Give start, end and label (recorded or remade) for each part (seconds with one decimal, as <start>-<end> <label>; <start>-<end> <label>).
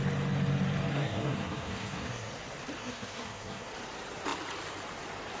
0.0-0.9 recorded; 0.9-2.3 remade; 2.3-2.8 recorded; 2.8-3.7 remade; 3.7-5.4 recorded